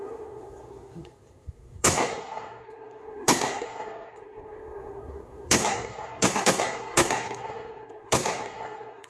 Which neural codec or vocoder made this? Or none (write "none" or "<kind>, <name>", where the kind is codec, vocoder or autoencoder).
codec, SNAC